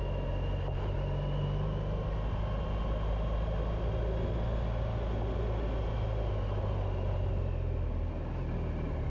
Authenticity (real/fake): real